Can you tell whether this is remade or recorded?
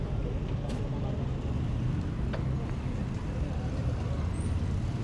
recorded